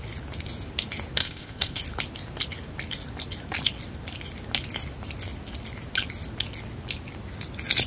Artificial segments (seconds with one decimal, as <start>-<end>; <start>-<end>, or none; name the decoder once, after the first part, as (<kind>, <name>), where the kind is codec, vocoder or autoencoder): 1.2-1.8 (codec, ZipCodec)